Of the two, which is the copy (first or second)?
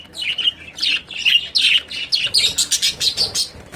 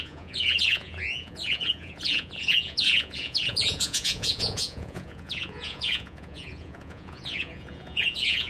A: second